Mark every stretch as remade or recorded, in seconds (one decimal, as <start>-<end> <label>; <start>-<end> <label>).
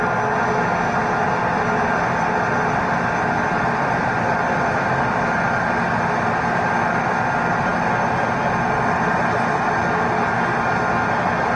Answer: 0.0-11.6 recorded